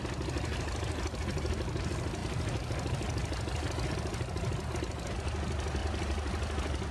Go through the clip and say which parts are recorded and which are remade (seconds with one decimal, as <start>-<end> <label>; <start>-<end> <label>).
0.0-6.9 recorded